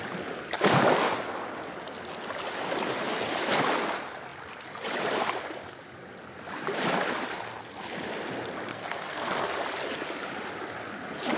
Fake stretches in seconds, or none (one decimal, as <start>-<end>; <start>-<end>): 8.7-9.5